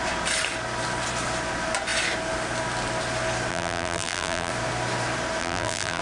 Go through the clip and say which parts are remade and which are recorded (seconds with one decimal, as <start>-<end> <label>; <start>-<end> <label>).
0.0-3.5 recorded; 3.5-4.5 remade; 4.5-5.4 recorded; 5.4-6.0 remade